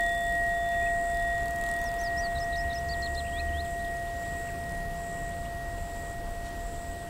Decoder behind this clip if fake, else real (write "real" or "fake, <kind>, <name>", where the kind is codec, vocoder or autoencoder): real